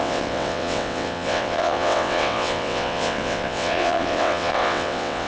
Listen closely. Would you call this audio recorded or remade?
remade